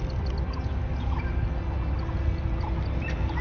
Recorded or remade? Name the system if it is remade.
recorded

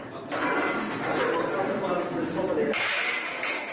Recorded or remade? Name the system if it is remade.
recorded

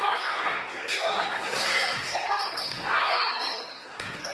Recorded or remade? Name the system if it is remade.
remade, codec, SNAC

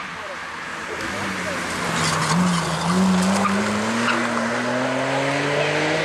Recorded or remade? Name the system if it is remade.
recorded